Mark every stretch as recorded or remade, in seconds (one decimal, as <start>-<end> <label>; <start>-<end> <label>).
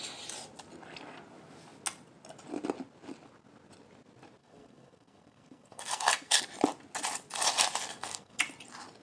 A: 0.0-4.4 recorded; 4.4-6.4 remade; 6.4-7.9 recorded; 7.9-8.4 remade; 8.4-9.0 recorded